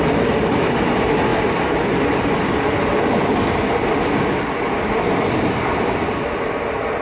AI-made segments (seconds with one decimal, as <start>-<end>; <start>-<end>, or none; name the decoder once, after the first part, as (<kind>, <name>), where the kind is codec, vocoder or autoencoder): none